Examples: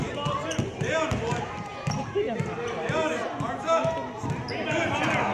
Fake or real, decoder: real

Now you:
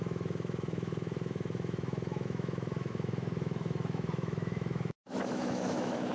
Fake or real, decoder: fake, autoencoder, DAC-VAE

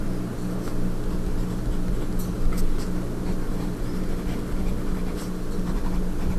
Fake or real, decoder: real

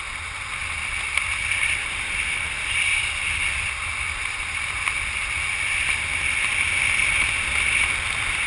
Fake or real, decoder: real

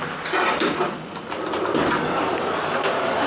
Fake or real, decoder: real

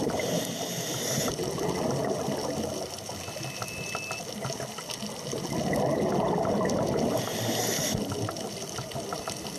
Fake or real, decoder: real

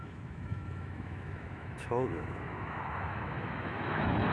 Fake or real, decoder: fake, autoencoder, DAC-VAE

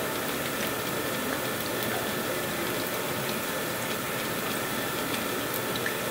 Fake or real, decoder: real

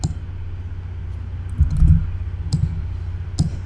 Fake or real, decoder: real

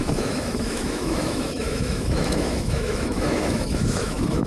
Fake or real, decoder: fake, autoencoder, DAC-VAE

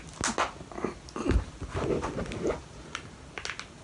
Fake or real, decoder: real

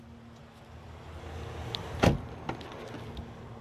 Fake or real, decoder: real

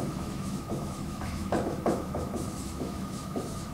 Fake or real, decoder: fake, autoencoder, DAC-VAE